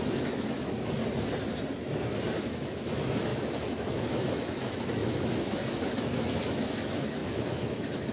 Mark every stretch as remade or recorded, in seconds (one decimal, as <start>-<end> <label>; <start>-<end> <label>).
0.0-1.0 remade; 1.0-2.4 recorded; 2.4-8.1 remade

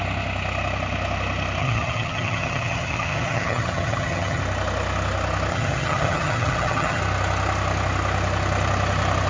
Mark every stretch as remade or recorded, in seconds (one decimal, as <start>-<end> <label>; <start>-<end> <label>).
0.0-1.6 recorded; 1.6-4.4 remade; 4.4-5.5 recorded; 5.5-7.0 remade; 7.0-9.3 recorded

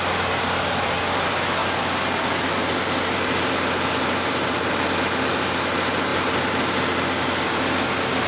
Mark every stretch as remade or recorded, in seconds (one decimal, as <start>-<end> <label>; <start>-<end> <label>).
0.0-8.3 recorded

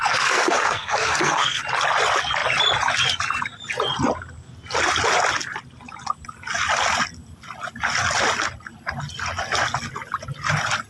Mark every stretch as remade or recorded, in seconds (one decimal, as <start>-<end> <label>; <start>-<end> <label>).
0.0-1.6 remade; 1.6-10.9 recorded

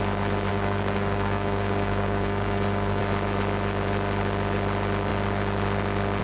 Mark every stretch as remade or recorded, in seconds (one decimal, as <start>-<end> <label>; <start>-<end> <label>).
0.0-0.5 recorded; 0.5-3.0 remade; 3.0-6.2 recorded

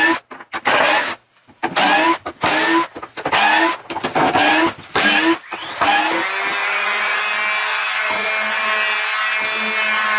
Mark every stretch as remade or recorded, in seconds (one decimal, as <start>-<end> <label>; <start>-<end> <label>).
0.0-6.6 recorded; 6.6-7.2 remade; 7.2-7.7 recorded; 7.7-8.3 remade; 8.3-10.2 recorded